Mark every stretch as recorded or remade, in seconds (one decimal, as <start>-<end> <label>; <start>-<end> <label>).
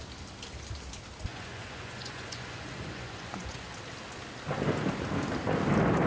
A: 0.0-1.3 recorded; 1.3-3.7 remade; 3.7-6.1 recorded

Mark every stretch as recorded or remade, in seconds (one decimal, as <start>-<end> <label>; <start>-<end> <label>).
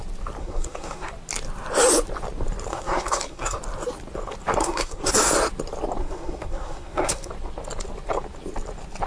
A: 0.0-0.4 recorded; 0.4-1.1 remade; 1.1-2.7 recorded; 2.7-3.6 remade; 3.6-4.6 recorded; 4.6-5.1 remade; 5.1-6.0 recorded; 6.0-7.3 remade; 7.3-9.1 recorded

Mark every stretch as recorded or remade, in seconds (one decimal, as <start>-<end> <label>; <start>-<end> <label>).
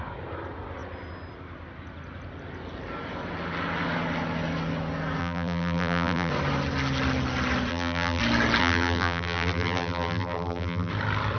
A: 0.0-5.2 recorded; 5.2-6.3 remade; 6.3-7.7 recorded; 7.7-8.2 remade; 8.2-8.6 recorded; 8.6-10.9 remade; 10.9-11.4 recorded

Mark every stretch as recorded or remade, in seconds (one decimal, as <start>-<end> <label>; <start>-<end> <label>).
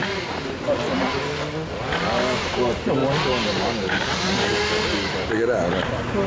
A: 0.0-6.3 recorded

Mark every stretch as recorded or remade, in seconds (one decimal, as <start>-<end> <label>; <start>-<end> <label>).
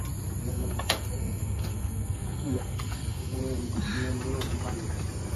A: 0.0-0.5 recorded; 0.5-3.4 remade; 3.4-5.4 recorded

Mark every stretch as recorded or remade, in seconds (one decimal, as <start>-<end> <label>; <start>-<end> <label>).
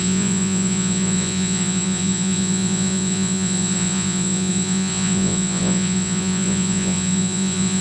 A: 0.0-7.8 remade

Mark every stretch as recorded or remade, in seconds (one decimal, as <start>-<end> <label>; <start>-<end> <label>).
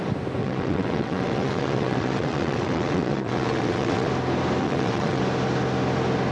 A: 0.0-0.4 recorded; 0.4-4.1 remade; 4.1-4.6 recorded; 4.6-5.2 remade; 5.2-6.3 recorded